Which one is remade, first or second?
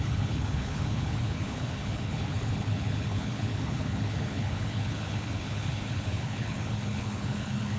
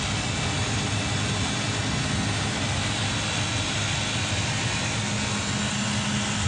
first